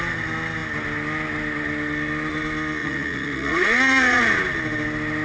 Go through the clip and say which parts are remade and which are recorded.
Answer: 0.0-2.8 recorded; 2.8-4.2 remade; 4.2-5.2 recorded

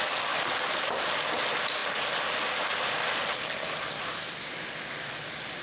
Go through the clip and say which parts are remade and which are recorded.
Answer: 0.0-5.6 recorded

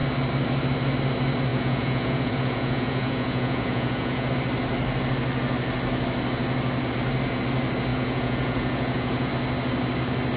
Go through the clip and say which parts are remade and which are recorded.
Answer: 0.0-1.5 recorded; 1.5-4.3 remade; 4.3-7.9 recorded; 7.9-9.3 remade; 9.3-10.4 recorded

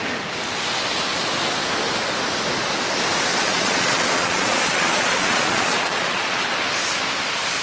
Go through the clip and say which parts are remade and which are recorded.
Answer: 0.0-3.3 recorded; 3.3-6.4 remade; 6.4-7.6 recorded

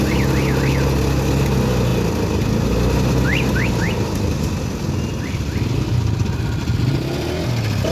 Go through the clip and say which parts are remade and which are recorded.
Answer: 0.0-7.9 recorded

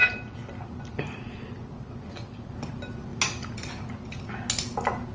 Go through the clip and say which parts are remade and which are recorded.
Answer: 0.0-5.1 recorded

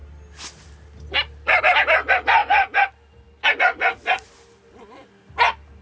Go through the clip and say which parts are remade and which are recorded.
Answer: 0.0-5.8 recorded